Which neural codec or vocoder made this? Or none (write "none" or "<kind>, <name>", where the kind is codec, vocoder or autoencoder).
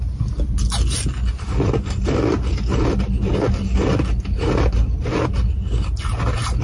none